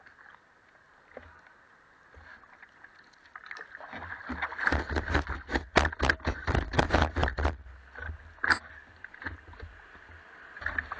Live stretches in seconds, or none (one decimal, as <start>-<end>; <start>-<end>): 0.0-11.0